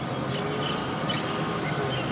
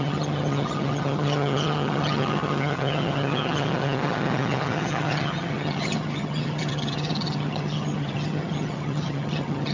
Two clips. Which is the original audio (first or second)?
first